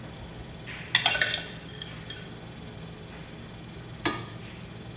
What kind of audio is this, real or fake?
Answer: real